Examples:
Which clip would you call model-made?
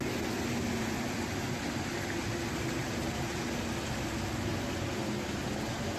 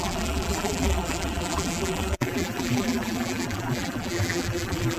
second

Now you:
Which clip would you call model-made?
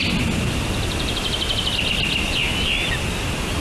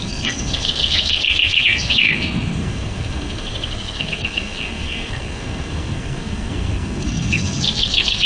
second